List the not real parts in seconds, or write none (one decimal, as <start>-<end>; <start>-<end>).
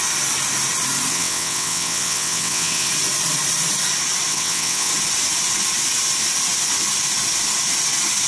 1.1-2.9; 4.3-4.9